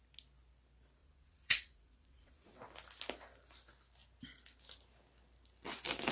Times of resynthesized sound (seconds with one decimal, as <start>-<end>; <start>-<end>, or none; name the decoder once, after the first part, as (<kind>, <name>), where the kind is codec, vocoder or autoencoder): 1.0-2.5 (vocoder, Vocos)

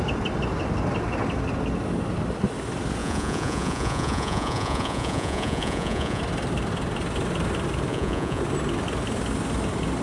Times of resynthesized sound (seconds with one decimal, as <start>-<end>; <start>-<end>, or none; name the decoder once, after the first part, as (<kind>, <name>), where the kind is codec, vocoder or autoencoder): 3.0-6.2 (vocoder, Vocos); 7.9-8.4

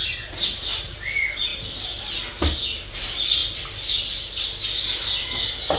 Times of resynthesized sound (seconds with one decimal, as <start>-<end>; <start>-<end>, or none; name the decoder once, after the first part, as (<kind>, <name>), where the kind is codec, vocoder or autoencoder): none

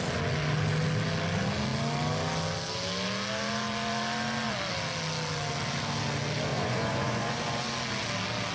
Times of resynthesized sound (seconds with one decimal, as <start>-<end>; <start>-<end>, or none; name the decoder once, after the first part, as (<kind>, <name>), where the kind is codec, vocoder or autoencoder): 6.5-7.6 (vocoder, Vocos)

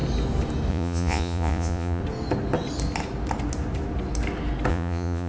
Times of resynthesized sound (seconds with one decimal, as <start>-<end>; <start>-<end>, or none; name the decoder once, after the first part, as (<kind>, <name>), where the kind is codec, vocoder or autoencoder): 0.7-2.0 (vocoder, Vocos); 4.7-5.3